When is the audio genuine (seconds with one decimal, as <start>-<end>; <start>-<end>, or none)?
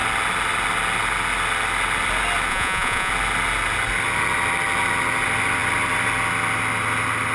0.0-2.5; 3.1-7.3